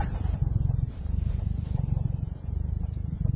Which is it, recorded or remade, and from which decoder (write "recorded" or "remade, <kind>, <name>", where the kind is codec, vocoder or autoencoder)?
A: remade, vocoder, BigVGAN v2